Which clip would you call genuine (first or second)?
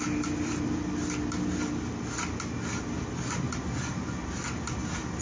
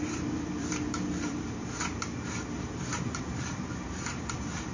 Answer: first